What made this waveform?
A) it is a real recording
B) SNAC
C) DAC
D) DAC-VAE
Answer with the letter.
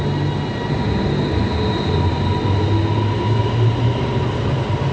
A